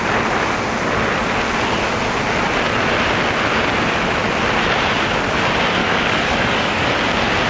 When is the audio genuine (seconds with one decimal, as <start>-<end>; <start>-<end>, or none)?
0.0-5.8; 6.9-7.5